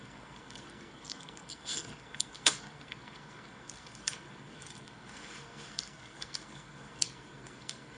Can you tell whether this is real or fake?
fake